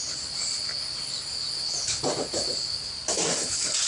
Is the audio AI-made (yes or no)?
no